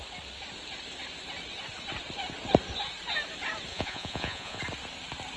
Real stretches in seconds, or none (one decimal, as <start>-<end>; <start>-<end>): 0.0-3.7; 4.6-5.4